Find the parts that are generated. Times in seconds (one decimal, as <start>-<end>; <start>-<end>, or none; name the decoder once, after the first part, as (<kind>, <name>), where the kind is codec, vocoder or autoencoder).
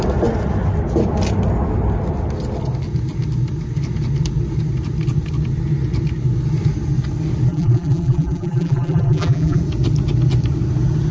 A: 7.5-9.6 (vocoder, BigVGAN v2)